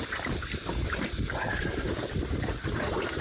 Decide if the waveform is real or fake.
real